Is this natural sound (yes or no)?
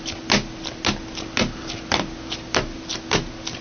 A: yes